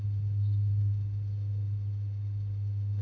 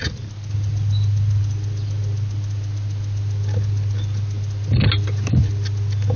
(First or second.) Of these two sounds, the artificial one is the first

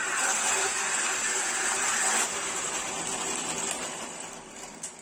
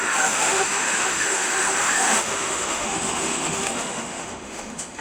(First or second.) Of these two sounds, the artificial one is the second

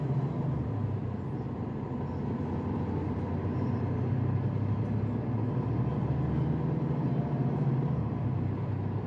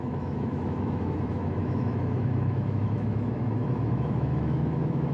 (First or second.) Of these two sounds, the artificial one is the second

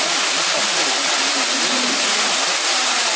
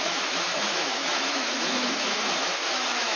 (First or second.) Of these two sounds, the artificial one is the second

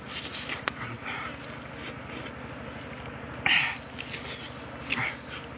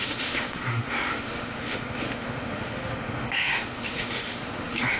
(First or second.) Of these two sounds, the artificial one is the second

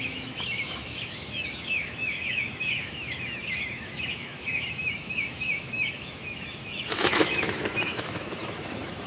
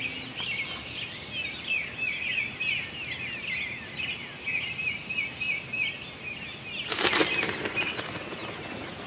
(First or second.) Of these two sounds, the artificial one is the first